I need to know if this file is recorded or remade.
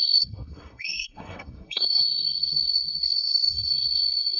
remade